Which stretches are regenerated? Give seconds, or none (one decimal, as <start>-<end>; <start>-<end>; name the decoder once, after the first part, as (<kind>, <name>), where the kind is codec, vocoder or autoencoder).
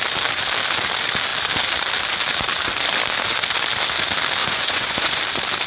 4.4-5.2 (vocoder, Vocos)